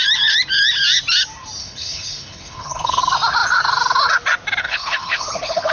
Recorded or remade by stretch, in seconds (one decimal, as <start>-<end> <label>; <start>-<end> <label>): 0.0-1.6 recorded; 1.6-3.0 remade; 3.0-4.6 recorded; 4.6-5.7 remade